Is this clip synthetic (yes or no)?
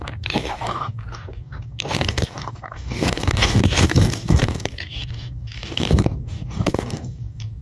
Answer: yes